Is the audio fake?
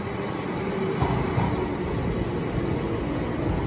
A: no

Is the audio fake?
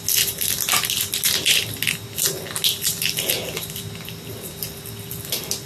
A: no